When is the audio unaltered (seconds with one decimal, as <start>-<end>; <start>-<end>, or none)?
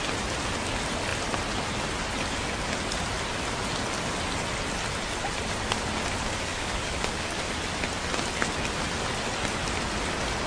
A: 0.0-6.5; 7.4-10.5